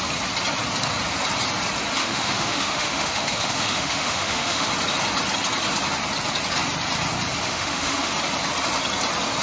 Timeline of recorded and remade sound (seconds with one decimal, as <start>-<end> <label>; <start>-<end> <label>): 0.0-2.0 recorded; 2.0-4.7 remade; 4.7-7.4 recorded; 7.4-8.1 remade; 8.1-9.4 recorded